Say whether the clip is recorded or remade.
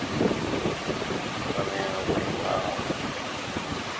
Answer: recorded